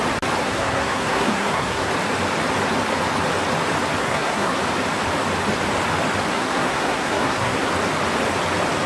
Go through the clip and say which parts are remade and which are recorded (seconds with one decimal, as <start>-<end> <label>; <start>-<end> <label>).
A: 0.0-0.4 recorded; 0.4-1.9 remade; 1.9-4.0 recorded; 4.0-4.6 remade; 4.6-6.3 recorded; 6.3-7.7 remade; 7.7-8.9 recorded